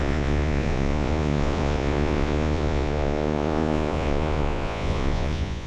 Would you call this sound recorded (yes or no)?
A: no